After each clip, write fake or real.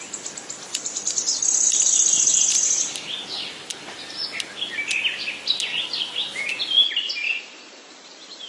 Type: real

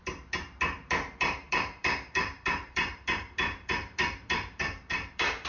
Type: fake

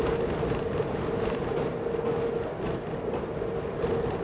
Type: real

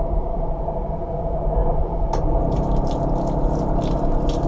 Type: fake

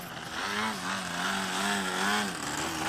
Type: real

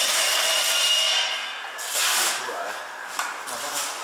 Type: real